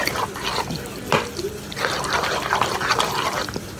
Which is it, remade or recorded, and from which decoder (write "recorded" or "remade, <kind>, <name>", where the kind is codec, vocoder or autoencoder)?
recorded